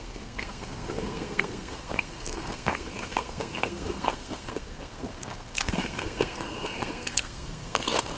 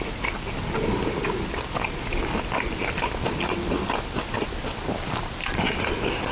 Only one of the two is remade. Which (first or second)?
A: first